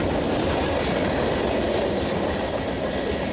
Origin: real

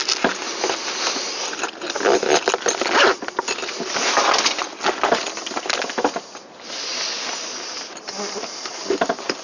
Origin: real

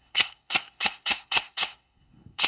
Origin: fake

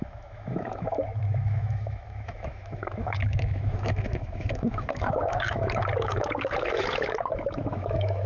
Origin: fake